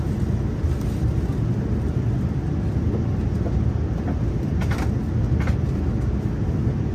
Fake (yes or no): no